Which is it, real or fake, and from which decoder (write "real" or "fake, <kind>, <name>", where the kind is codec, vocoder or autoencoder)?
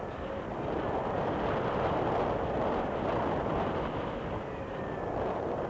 real